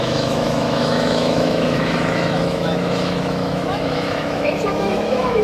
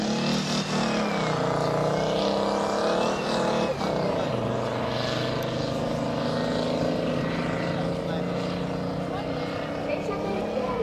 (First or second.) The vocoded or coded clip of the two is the first